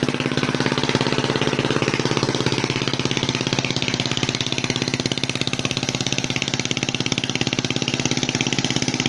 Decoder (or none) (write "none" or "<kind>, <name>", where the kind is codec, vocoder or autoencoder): none